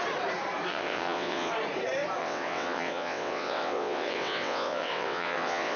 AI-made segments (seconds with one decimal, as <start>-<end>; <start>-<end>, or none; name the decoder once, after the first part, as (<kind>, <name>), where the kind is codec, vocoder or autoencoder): 0.7-1.5 (vocoder, WaveNeXt); 2.2-5.8